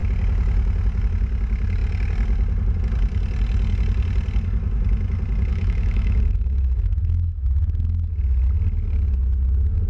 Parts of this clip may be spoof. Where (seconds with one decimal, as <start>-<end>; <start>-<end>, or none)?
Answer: 5.5-8.1